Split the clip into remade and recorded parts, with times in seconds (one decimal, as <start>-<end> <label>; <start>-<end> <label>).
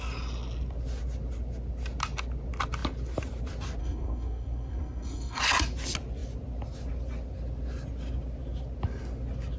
0.0-3.8 recorded; 3.8-5.4 remade; 5.4-9.6 recorded